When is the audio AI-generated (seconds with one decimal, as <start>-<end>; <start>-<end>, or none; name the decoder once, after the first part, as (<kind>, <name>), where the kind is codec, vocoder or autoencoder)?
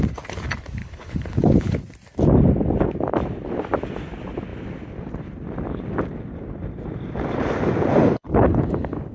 0.8-1.8 (codec, HILCodec); 8.0-8.6